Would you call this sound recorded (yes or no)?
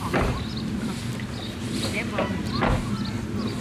yes